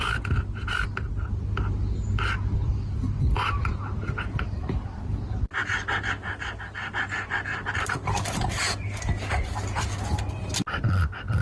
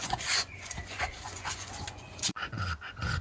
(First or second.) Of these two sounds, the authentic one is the first